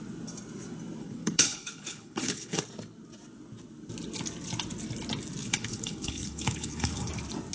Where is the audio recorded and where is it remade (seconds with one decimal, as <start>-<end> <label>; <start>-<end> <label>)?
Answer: 0.0-1.0 recorded; 1.0-2.6 remade; 2.6-5.4 recorded; 5.4-7.1 remade; 7.1-7.5 recorded